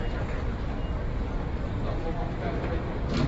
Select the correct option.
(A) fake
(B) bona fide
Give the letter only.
B